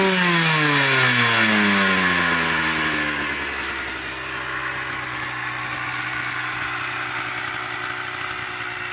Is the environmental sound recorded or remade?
recorded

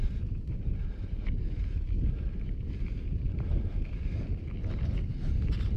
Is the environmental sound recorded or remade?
recorded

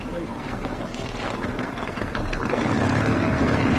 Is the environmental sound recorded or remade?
remade